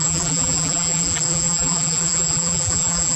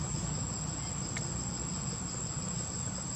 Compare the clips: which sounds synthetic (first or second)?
first